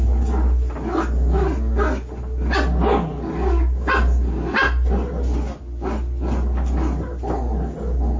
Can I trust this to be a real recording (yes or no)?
yes